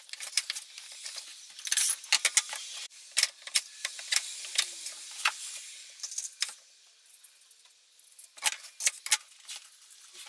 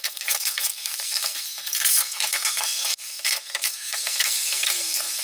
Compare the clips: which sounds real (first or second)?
first